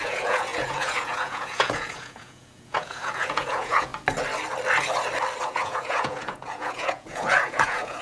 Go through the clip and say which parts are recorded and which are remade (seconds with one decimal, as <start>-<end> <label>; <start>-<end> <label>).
0.0-3.9 remade; 3.9-5.4 recorded; 5.4-8.0 remade